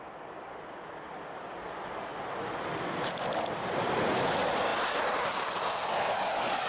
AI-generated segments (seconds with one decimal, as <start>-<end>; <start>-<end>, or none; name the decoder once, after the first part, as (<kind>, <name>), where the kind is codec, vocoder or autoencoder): none